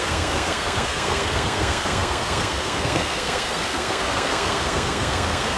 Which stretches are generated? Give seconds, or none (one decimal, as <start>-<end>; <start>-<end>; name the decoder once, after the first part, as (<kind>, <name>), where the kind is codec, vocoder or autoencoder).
0.0-5.6 (codec, SNAC)